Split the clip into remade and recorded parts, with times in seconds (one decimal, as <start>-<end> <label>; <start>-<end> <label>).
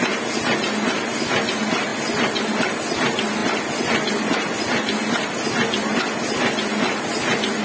0.0-7.6 recorded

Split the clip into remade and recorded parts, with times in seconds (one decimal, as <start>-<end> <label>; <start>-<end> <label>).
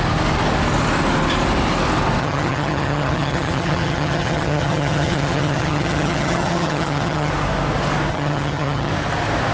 0.0-2.2 recorded; 2.2-7.3 remade; 7.3-8.1 recorded; 8.1-8.9 remade; 8.9-9.5 recorded